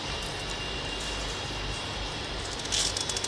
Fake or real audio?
real